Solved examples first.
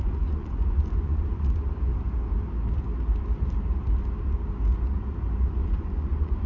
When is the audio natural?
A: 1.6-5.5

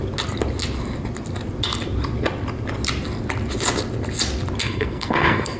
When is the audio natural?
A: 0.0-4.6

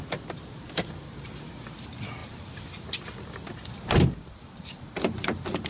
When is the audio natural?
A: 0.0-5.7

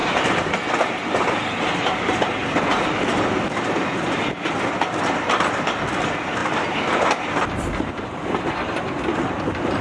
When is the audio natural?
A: 0.7-9.8

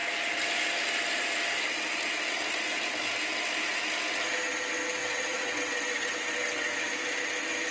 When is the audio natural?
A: 0.0-5.0; 6.7-7.7

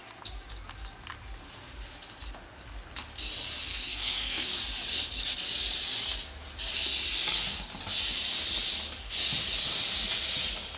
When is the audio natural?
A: 0.0-3.7; 4.5-10.8